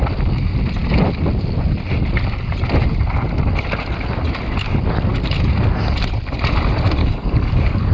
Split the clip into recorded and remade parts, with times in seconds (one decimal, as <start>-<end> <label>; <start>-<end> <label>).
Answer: 0.0-7.0 recorded; 7.0-7.9 remade

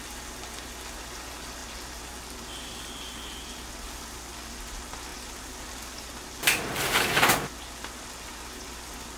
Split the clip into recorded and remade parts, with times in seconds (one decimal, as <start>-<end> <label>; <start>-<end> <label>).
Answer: 0.0-9.2 recorded

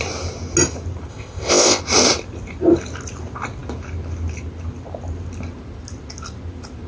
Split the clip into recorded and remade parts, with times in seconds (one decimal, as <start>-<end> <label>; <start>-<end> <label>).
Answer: 0.0-1.1 recorded; 1.1-1.8 remade; 1.8-6.9 recorded

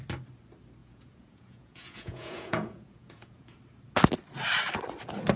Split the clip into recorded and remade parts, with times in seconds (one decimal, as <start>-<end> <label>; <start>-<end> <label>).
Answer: 0.0-0.8 recorded; 0.8-3.6 remade; 3.6-5.4 recorded

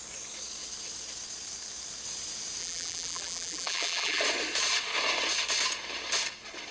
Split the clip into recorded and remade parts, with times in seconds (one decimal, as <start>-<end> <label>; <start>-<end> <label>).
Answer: 0.0-2.6 recorded; 2.6-4.2 remade; 4.2-6.7 recorded

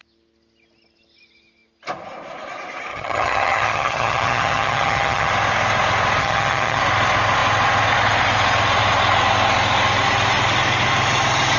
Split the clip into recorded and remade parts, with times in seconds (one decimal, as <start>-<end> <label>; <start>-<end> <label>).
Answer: 0.0-2.9 recorded; 2.9-5.3 remade; 5.3-6.2 recorded; 6.2-6.8 remade; 6.8-11.6 recorded

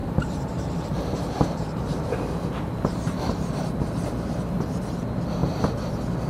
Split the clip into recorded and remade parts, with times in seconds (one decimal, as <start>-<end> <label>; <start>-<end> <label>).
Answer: 0.0-3.8 remade; 3.8-6.3 recorded

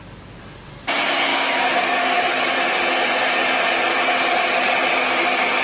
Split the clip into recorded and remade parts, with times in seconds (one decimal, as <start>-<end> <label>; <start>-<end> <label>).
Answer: 0.0-1.3 recorded; 1.3-2.3 remade; 2.3-5.6 recorded